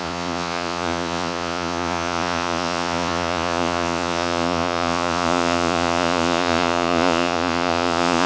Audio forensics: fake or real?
fake